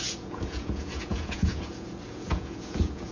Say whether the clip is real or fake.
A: fake